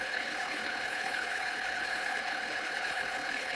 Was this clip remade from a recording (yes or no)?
yes